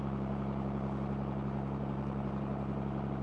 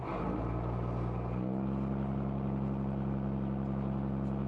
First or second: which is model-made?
first